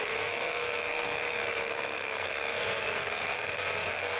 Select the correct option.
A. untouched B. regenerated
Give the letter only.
B